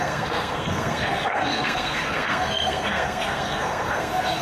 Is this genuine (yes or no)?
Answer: no